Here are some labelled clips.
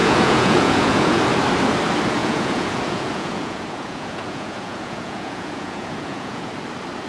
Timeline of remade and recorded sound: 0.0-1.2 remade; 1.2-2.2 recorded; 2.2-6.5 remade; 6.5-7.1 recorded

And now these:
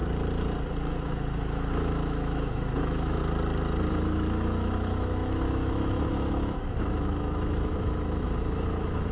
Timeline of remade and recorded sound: 0.0-0.9 recorded; 0.9-3.2 remade; 3.2-3.9 recorded; 3.9-9.1 remade

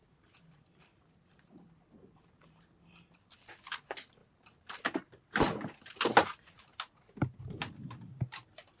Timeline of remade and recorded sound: 0.0-8.8 recorded